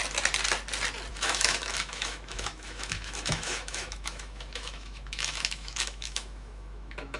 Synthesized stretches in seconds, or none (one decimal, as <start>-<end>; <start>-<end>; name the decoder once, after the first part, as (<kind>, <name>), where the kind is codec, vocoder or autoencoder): 1.1-7.2 (autoencoder, DAC-VAE)